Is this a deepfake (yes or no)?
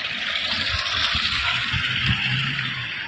no